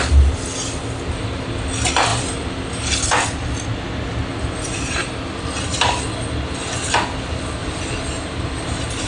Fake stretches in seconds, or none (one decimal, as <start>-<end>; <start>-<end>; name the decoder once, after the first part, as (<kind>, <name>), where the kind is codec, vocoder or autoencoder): 7.6-9.1 (vocoder, BigVGAN v2)